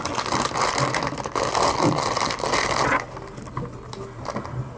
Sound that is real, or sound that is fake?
real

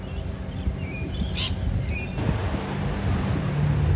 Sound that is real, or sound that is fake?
real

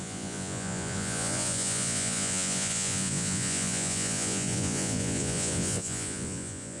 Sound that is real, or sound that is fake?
fake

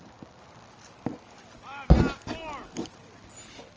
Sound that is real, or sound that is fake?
real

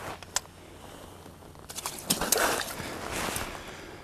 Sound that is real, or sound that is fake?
real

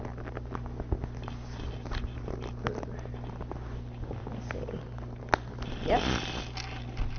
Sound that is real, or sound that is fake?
real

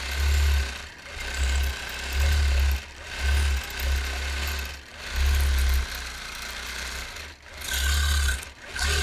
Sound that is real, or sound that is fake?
real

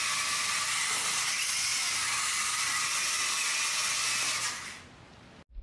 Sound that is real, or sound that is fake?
real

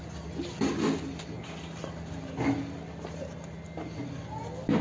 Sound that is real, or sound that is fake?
real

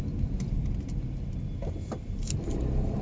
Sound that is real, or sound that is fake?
real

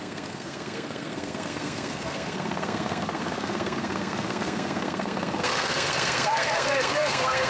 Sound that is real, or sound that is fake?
fake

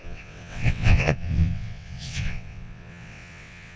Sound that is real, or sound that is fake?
fake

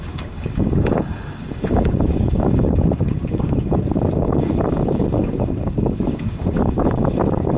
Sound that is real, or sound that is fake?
fake